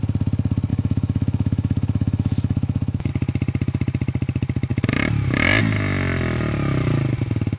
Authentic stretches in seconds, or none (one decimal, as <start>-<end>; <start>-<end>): 0.0-0.7; 3.1-7.6